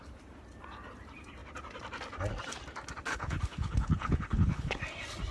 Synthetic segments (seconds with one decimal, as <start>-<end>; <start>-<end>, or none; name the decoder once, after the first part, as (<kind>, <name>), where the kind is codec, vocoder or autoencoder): 3.1-4.8 (codec, HILCodec)